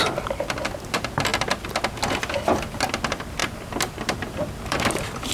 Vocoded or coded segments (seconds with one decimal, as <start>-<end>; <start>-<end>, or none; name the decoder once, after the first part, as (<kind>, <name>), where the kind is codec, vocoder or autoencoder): 0.0-1.3 (vocoder, BigVGAN v2); 2.1-5.3